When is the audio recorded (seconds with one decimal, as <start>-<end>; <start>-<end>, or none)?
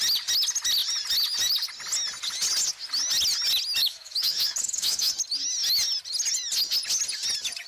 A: 0.0-3.8; 5.1-7.7